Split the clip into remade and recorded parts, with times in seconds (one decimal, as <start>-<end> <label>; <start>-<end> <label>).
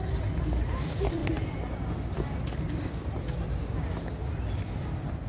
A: 0.0-5.3 recorded